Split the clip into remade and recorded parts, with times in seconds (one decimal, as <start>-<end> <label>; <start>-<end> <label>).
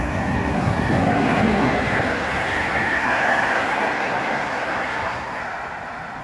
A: 0.0-5.4 remade; 5.4-6.2 recorded